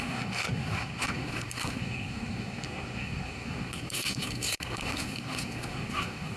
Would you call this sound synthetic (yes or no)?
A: yes